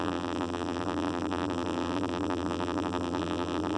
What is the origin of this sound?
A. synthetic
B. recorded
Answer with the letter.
A